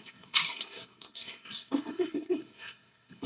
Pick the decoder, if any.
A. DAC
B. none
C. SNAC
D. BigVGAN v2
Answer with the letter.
C